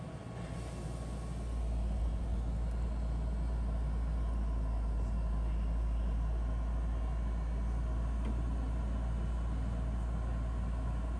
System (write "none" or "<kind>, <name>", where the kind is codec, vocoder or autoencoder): none